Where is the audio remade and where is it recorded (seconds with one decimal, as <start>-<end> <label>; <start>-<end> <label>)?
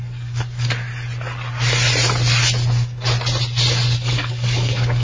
0.0-0.9 remade; 0.9-3.9 recorded; 3.9-5.0 remade